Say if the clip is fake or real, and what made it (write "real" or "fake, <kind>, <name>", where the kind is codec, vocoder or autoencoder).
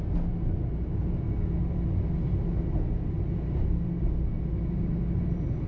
real